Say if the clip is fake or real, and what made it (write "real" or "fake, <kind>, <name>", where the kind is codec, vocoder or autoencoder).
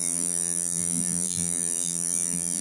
fake, vocoder, BigVGAN v2